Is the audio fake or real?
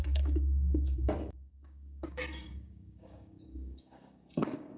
fake